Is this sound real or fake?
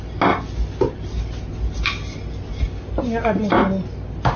real